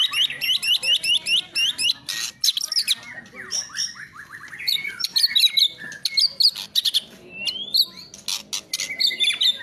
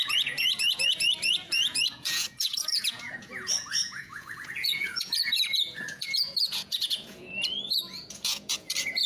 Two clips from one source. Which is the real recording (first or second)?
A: first